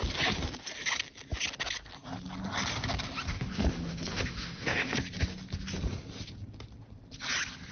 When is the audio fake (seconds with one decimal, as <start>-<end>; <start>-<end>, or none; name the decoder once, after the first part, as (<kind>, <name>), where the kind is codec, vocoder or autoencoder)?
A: 3.3-5.0 (autoencoder, DAC-VAE)

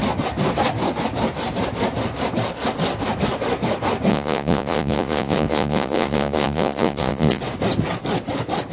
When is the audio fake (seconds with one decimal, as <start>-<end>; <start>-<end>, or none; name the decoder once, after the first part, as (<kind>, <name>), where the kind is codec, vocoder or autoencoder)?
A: 4.1-7.4 (vocoder, Vocos)

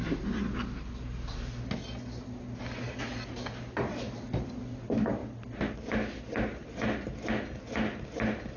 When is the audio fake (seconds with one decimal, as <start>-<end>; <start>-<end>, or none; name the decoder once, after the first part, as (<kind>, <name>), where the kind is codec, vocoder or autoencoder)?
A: none

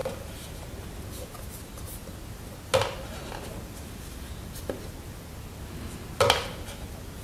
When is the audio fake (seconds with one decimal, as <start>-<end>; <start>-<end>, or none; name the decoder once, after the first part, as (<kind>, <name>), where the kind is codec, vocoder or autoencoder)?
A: none

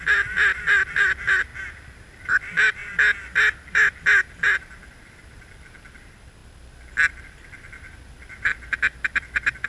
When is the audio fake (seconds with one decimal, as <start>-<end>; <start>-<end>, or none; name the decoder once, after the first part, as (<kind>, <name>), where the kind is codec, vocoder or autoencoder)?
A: 0.0-1.5 (vocoder, BigVGAN v2); 2.1-2.8; 4.0-6.4; 7.2-9.7

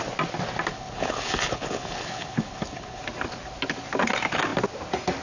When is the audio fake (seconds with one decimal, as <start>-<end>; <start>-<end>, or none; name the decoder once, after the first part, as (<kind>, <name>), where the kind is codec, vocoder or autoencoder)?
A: 0.7-3.0 (codec, HILCodec)

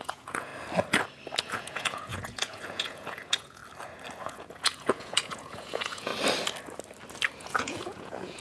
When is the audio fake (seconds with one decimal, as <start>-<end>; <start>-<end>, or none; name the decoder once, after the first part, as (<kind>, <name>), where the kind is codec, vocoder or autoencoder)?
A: 0.0-0.5 (vocoder, Vocos); 1.4-3.6; 4.2-6.1; 7.4-8.4

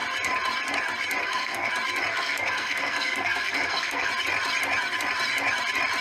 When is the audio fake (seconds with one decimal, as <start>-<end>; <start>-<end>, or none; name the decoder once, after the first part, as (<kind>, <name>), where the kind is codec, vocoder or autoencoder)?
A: 1.2-1.7 (codec, SNAC); 2.1-4.1